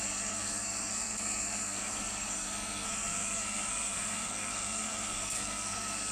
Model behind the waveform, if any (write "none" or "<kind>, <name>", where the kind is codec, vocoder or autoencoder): codec, SNAC